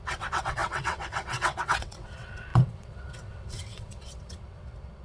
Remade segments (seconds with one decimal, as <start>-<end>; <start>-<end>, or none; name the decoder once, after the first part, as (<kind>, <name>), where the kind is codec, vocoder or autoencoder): 0.0-5.0 (vocoder, WaveNeXt)